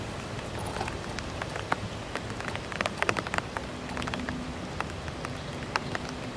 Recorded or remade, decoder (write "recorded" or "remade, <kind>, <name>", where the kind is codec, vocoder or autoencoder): recorded